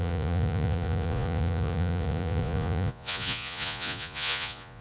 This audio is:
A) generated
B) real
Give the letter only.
A